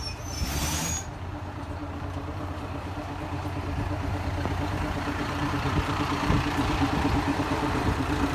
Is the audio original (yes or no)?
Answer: no